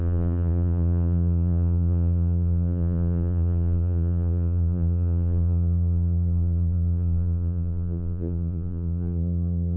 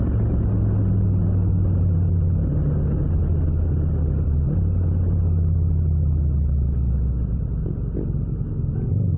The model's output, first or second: first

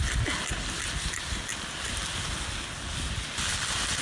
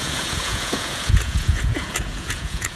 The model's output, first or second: second